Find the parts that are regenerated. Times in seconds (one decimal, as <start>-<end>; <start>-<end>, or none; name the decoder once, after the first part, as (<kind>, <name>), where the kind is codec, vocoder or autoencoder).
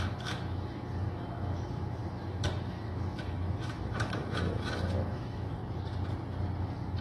0.0-5.6 (autoencoder, DAC-VAE); 6.6-7.0